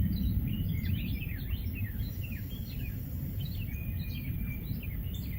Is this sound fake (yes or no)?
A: yes